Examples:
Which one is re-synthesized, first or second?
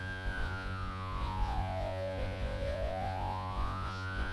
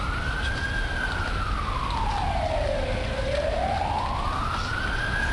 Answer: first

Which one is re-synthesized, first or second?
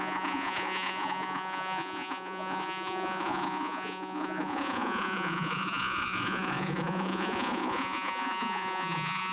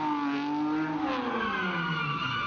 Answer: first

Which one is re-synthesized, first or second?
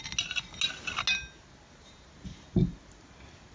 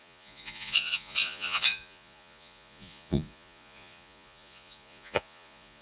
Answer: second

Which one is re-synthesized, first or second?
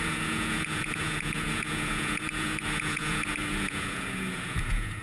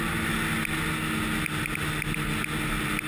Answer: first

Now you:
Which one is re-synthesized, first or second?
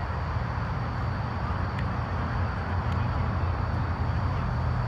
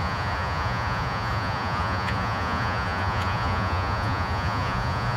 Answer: second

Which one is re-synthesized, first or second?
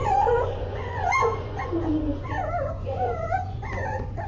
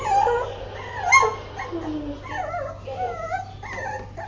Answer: first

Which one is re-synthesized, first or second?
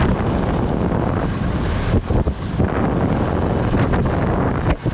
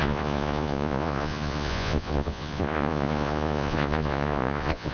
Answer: second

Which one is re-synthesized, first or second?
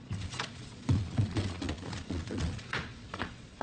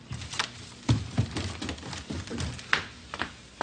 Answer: first